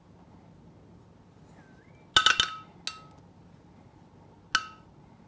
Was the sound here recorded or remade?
recorded